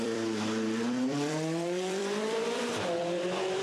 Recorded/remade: remade